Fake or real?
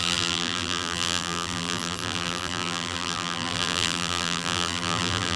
fake